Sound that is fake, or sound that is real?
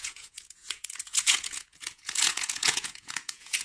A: fake